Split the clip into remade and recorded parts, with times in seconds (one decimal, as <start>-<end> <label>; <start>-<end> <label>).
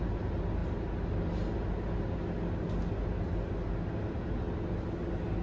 0.0-5.4 recorded